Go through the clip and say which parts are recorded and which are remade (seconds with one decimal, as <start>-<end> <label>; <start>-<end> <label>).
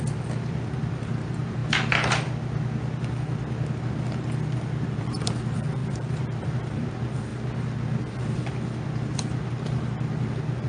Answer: 0.0-1.6 remade; 1.6-4.8 recorded; 4.8-7.3 remade; 7.3-8.0 recorded; 8.0-10.7 remade